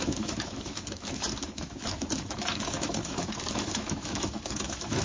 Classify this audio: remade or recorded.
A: remade